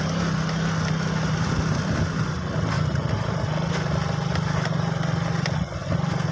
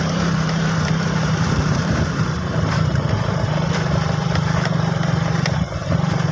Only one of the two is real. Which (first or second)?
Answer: first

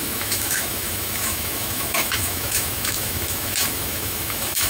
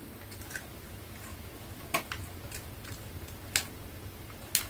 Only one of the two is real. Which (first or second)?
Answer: second